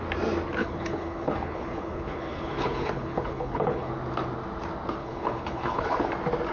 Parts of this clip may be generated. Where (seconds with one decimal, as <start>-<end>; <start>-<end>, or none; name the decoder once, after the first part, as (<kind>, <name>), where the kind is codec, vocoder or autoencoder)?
0.6-3.9 (codec, HILCodec); 5.0-6.1